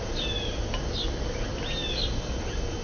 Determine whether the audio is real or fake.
real